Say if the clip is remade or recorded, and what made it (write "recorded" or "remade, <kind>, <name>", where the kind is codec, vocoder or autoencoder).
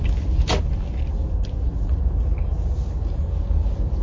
recorded